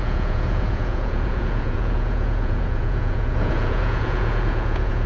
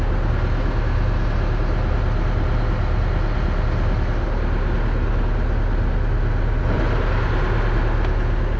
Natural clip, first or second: second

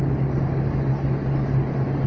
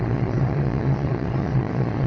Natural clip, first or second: first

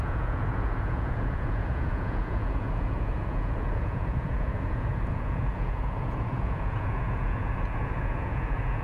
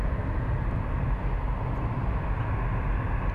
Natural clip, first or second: second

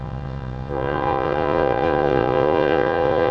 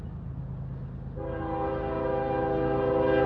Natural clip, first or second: second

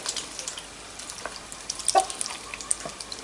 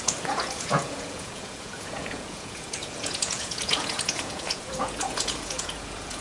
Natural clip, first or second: first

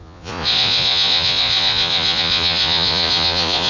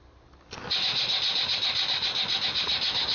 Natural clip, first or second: second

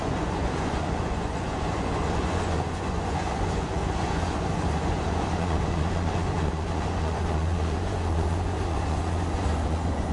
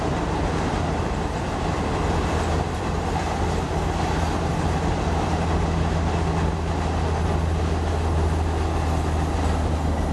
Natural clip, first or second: second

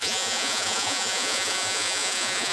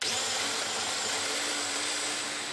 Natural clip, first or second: second